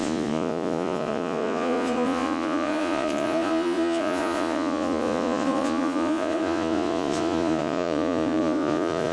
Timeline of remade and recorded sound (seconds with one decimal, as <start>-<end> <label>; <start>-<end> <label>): 0.0-9.1 remade